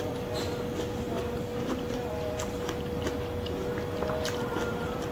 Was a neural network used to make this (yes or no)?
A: no